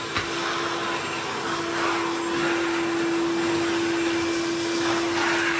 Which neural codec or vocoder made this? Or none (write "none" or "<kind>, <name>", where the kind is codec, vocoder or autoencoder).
none